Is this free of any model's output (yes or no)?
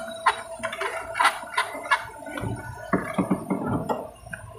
yes